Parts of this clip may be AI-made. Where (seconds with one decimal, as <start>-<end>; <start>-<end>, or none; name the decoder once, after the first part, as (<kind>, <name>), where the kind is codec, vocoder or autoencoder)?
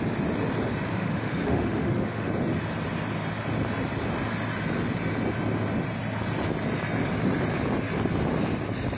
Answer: 0.9-2.3 (autoencoder, DAC-VAE)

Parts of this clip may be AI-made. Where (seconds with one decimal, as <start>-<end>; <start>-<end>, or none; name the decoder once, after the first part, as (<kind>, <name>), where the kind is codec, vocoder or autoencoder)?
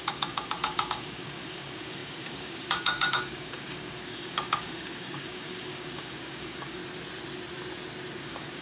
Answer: 0.0-6.8 (codec, DAC); 8.2-8.6